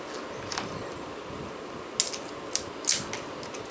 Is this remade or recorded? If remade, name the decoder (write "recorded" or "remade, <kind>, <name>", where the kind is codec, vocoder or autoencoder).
recorded